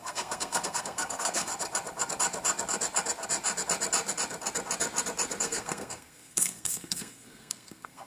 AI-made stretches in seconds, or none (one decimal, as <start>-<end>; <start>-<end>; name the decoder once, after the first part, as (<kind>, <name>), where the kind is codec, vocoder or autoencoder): 0.0-1.5 (codec, SNAC); 5.4-8.1